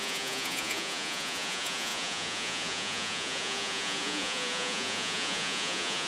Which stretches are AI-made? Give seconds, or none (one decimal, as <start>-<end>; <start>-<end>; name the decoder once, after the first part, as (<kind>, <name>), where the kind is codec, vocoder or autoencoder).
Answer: 0.0-6.1 (vocoder, Vocos)